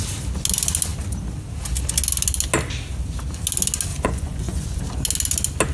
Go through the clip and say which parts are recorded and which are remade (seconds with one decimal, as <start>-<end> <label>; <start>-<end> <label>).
0.0-3.9 recorded; 3.9-4.8 remade; 4.8-5.7 recorded